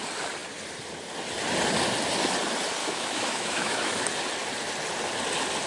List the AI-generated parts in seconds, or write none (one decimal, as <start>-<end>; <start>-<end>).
2.8-4.0